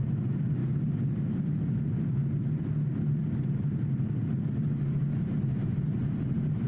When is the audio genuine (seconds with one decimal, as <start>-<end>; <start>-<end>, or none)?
0.0-6.7